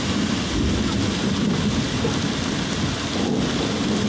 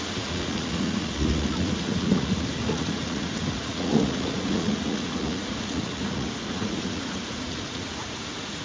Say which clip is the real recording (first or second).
first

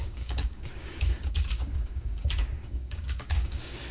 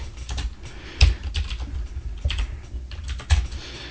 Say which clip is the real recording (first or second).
second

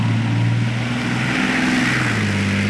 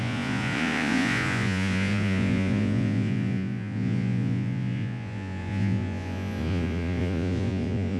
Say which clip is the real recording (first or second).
first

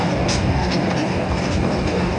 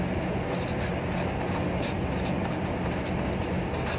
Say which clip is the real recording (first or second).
second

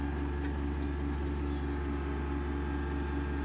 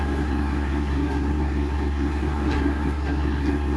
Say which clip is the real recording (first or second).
first